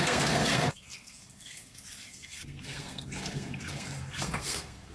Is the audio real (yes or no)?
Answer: no